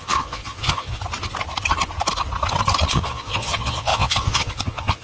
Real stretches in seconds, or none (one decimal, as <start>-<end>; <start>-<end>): 1.0-2.9